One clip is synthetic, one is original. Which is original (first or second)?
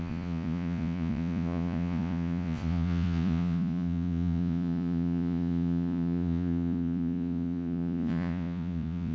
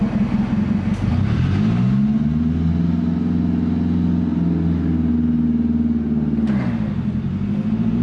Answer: second